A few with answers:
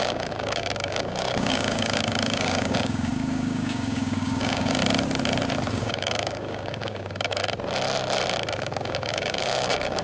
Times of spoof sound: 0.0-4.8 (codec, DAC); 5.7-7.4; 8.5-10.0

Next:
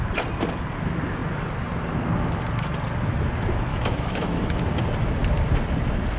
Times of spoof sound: 3.7-4.6 (autoencoder, DAC-VAE)